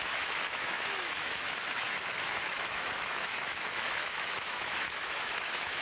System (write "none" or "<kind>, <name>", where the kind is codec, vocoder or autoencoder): autoencoder, DAC-VAE